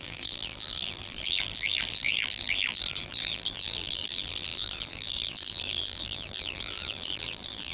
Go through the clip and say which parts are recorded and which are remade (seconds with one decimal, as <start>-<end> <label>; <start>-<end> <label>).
0.0-7.7 remade